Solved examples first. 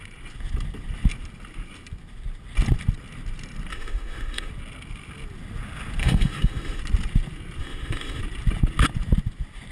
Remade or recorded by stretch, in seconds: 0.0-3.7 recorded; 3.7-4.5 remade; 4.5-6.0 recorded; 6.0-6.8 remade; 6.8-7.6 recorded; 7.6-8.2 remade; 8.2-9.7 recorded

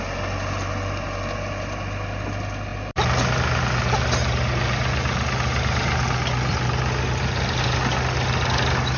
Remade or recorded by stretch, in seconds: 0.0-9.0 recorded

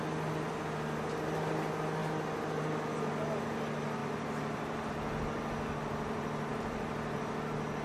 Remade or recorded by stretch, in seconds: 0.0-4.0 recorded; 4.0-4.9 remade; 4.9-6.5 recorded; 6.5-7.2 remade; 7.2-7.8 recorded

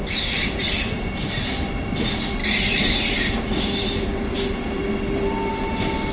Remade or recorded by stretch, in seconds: 0.0-6.1 recorded